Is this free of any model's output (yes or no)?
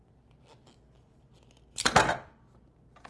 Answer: yes